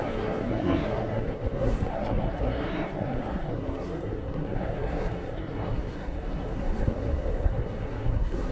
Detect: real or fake fake